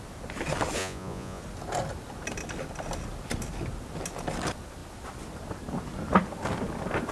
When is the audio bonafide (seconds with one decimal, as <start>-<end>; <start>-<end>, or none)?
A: 0.0-0.8; 1.4-7.1